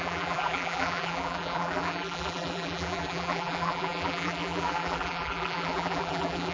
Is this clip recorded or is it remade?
remade